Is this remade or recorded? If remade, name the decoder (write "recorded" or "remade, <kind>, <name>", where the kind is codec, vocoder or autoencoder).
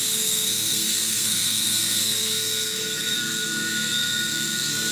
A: remade, codec, SNAC